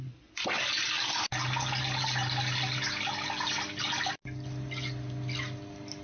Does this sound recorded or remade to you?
recorded